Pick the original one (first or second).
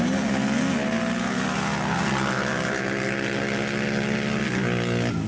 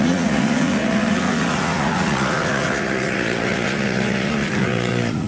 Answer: first